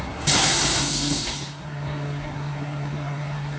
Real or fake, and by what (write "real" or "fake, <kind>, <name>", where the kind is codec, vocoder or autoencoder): fake, codec, SNAC